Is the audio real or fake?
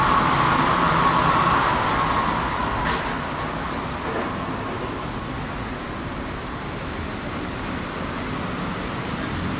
real